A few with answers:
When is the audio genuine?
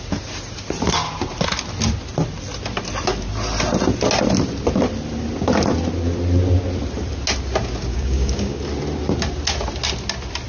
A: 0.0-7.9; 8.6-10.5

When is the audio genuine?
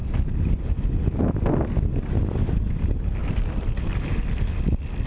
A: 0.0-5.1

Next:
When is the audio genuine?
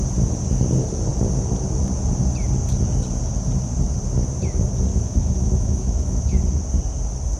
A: 0.0-4.9; 6.4-7.4